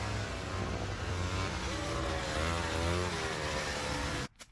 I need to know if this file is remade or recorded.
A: remade